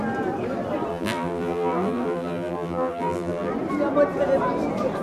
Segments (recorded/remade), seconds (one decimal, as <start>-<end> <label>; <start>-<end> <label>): 0.0-0.9 recorded; 0.9-3.5 remade; 3.5-5.0 recorded